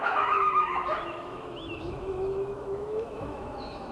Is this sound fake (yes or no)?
yes